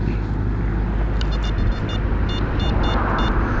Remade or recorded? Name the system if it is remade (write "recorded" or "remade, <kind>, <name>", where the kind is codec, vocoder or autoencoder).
recorded